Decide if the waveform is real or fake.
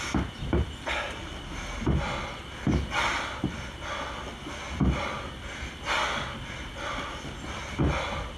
real